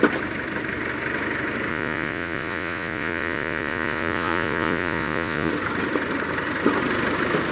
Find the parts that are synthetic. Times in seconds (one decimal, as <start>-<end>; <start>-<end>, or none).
1.7-5.5